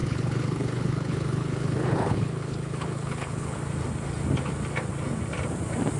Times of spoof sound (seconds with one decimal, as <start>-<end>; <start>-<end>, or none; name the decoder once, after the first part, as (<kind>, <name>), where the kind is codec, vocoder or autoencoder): 0.0-3.6 (codec, HILCodec)

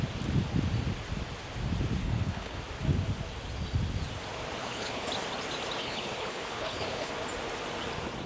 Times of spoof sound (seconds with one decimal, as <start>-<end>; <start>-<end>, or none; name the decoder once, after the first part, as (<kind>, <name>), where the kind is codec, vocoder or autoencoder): 2.0-2.6 (codec, HILCodec); 4.6-5.1; 5.8-7.1

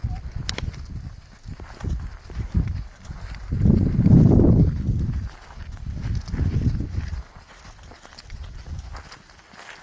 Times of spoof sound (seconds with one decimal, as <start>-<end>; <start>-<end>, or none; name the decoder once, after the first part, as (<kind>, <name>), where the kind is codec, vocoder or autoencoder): none

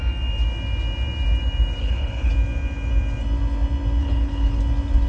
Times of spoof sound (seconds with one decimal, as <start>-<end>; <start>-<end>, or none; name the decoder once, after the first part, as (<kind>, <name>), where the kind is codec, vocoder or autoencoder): 1.8-2.3 (codec, HILCodec); 4.0-4.6

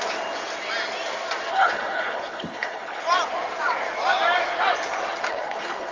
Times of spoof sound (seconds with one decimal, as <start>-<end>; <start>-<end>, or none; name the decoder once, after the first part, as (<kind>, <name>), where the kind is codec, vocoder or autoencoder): 1.5-3.0 (codec, HILCodec); 5.3-5.9